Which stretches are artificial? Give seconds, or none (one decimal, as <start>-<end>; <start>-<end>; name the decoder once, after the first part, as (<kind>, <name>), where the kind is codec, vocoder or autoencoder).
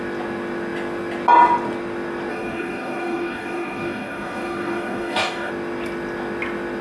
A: 2.3-5.5 (codec, DAC)